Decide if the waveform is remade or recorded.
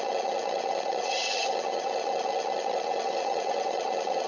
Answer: remade